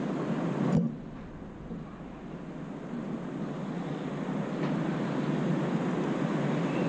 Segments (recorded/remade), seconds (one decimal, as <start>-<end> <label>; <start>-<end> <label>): 0.0-6.9 recorded